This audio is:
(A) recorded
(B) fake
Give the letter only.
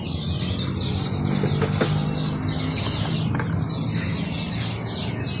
A